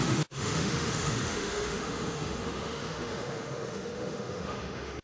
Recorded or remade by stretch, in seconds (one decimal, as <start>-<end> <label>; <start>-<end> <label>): 0.0-5.0 remade